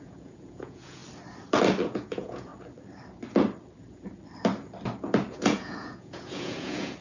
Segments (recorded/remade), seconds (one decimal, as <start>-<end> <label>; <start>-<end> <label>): 0.0-1.0 remade; 1.0-1.8 recorded; 1.8-2.5 remade; 2.5-5.3 recorded; 5.3-7.0 remade